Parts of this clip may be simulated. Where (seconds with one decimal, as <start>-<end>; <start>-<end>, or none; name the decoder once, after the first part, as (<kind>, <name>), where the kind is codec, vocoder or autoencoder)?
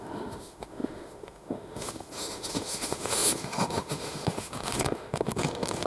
0.0-5.9 (autoencoder, DAC-VAE)